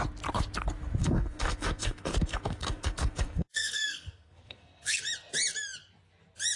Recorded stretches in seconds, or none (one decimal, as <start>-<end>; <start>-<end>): 0.0-1.0; 5.0-6.6